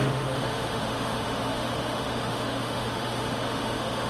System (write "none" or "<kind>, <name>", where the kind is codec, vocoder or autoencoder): autoencoder, DAC-VAE